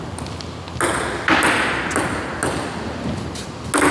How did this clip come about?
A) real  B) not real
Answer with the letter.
A